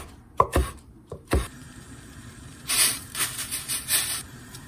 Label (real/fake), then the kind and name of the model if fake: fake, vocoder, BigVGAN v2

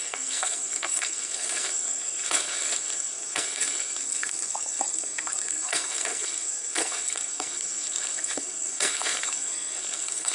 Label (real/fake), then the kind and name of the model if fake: fake, codec, SNAC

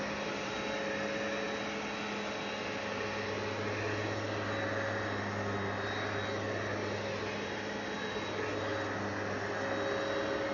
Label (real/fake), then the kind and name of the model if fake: real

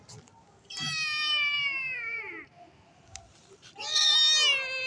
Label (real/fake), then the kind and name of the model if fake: real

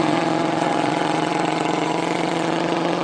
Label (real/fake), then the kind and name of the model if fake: fake, vocoder, Vocos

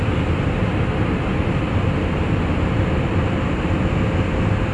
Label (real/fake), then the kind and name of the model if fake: real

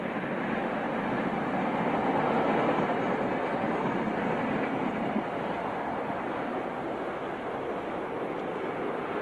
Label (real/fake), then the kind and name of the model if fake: real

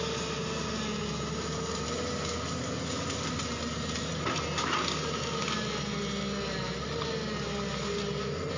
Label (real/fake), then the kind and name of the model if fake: real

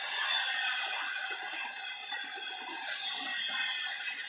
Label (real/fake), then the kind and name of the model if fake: real